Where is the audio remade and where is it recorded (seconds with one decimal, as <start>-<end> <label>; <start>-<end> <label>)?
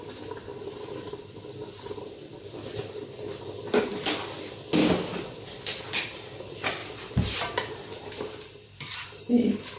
0.0-6.8 recorded; 6.8-9.3 remade; 9.3-9.8 recorded